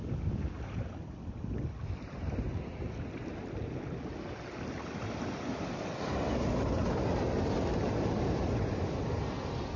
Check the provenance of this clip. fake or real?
real